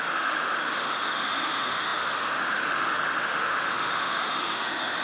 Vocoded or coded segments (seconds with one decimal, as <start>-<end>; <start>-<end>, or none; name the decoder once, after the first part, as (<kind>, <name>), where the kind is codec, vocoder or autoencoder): 0.0-5.0 (autoencoder, DAC-VAE)